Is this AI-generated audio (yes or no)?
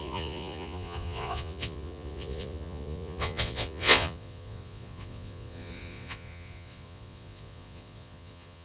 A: yes